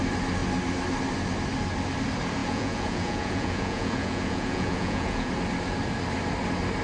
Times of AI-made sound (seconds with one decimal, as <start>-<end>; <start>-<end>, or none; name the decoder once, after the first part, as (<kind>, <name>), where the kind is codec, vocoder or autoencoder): 2.4-5.3 (vocoder, Vocos)